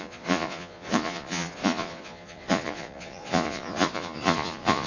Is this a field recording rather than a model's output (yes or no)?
no